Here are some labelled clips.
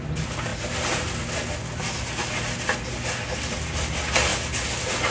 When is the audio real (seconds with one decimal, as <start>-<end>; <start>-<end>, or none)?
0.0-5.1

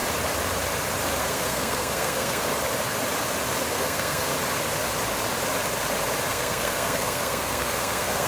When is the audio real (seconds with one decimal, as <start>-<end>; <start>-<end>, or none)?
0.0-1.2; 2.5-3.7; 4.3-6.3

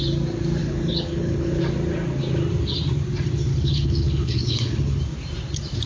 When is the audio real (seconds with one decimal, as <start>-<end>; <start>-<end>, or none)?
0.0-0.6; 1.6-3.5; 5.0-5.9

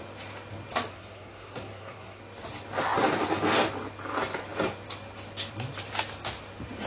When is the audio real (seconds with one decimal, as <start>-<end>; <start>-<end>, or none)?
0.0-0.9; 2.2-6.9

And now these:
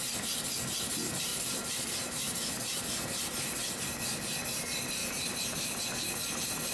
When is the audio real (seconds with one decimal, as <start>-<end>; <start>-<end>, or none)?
0.0-6.7

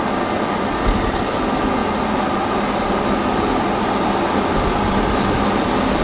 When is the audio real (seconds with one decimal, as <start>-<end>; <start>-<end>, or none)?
0.0-6.0